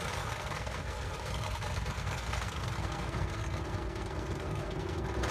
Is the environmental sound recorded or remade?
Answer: remade